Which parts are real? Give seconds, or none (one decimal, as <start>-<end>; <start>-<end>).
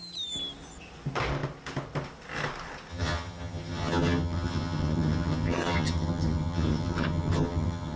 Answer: 0.0-2.9